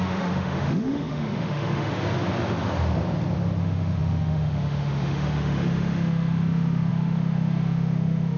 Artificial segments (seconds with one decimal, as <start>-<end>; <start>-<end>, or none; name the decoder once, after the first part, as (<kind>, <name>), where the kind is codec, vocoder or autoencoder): 0.0-1.9 (autoencoder, DAC-VAE); 3.6-8.4